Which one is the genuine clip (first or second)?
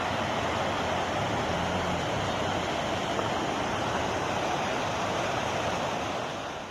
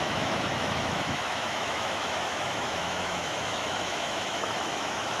first